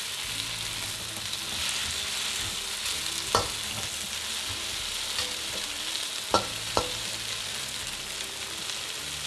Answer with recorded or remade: recorded